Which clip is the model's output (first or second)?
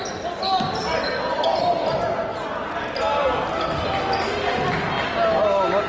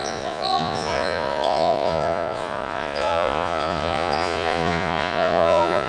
second